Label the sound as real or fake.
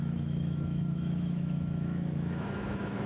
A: fake